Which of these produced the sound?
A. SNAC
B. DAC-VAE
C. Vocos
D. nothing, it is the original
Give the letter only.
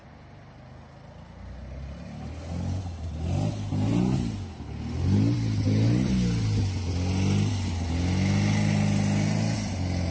D